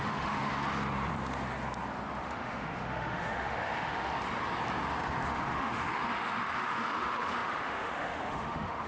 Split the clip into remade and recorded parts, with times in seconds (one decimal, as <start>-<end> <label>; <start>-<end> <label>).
0.0-0.5 remade; 0.5-2.2 recorded; 2.2-4.1 remade; 4.1-5.3 recorded; 5.3-8.9 remade